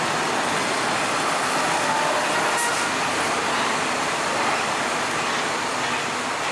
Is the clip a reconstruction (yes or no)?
no